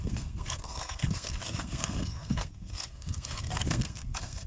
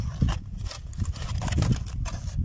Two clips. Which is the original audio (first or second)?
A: second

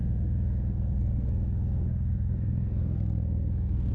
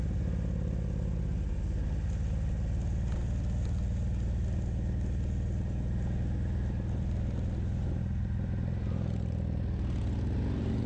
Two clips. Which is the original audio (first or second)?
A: second